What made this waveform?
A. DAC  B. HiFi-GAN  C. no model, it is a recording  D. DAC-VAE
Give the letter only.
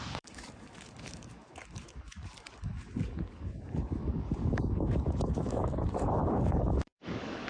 A